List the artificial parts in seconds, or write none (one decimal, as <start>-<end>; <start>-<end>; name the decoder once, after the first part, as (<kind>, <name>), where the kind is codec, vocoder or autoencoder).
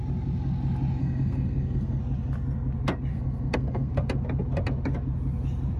1.0-2.0 (codec, SNAC); 3.1-3.9